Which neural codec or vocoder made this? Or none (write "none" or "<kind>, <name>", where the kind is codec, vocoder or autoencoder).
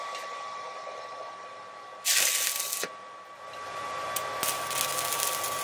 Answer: none